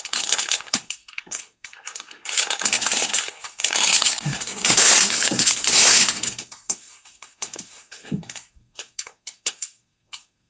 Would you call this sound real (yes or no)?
no